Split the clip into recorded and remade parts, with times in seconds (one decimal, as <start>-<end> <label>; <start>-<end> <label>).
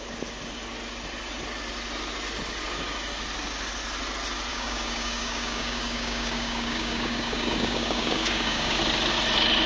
0.0-4.5 recorded; 4.5-8.8 remade; 8.8-9.7 recorded